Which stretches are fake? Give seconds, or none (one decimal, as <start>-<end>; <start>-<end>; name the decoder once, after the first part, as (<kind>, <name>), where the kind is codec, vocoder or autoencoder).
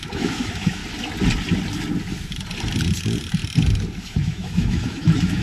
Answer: 0.0-0.8 (autoencoder, DAC-VAE); 4.0-5.4